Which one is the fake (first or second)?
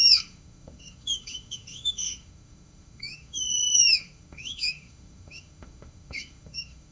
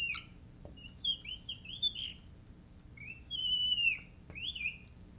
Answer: first